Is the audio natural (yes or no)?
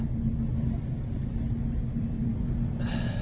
yes